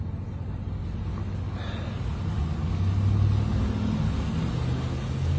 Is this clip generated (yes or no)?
no